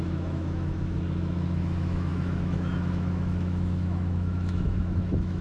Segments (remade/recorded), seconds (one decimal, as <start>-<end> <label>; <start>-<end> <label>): 0.0-5.4 remade